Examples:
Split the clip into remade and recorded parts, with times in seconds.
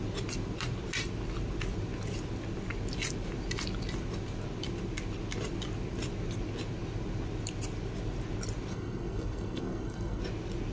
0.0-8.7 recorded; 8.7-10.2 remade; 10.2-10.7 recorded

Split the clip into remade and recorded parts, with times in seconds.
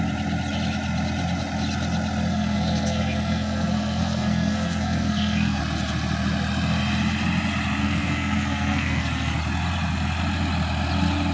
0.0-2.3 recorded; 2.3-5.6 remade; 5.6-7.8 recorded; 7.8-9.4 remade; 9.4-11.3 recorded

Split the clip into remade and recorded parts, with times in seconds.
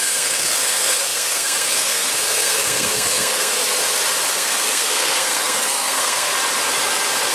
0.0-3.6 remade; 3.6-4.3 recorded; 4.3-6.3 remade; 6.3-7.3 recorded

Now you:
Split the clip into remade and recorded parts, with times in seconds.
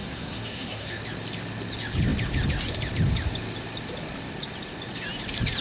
0.0-1.0 remade; 1.0-5.6 recorded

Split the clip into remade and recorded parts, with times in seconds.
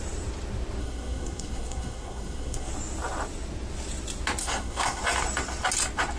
0.0-0.8 recorded; 0.8-2.7 remade; 2.7-4.4 recorded; 4.4-5.0 remade; 5.0-6.2 recorded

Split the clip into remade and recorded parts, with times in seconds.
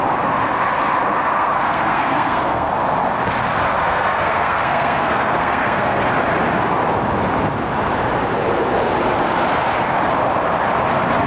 0.0-1.3 recorded; 1.3-2.7 remade; 2.7-3.8 recorded; 3.8-6.1 remade; 6.1-11.3 recorded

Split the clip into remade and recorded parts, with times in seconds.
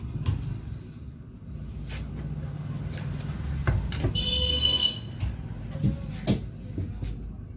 0.0-4.5 recorded; 4.5-5.1 remade; 5.1-7.6 recorded